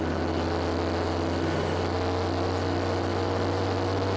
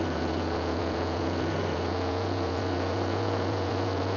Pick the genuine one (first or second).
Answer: first